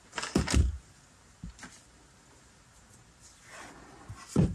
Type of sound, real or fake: real